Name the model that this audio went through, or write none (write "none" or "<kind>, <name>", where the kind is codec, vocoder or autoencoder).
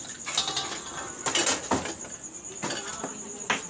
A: none